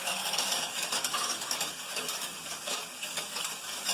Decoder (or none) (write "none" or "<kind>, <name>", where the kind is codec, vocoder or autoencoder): codec, DAC